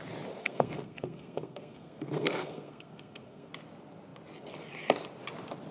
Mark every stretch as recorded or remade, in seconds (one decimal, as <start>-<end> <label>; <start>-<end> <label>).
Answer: 0.0-0.4 recorded; 0.4-3.5 remade; 3.5-5.7 recorded